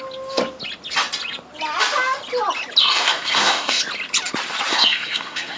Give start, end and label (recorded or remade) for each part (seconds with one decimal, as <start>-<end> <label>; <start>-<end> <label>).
0.0-2.8 recorded; 2.8-3.8 remade; 3.8-4.7 recorded; 4.7-5.6 remade